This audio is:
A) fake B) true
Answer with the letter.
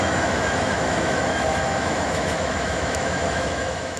A